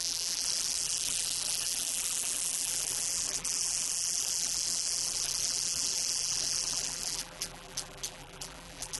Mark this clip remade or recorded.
remade